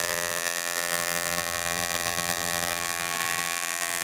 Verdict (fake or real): fake